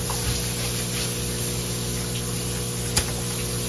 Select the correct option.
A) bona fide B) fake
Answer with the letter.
A